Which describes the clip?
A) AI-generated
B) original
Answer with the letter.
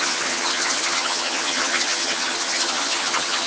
A